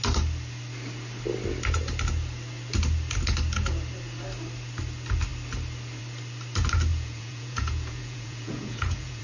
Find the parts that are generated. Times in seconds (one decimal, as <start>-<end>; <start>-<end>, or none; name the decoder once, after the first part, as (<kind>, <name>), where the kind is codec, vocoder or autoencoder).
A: 6.9-9.2 (vocoder, Vocos)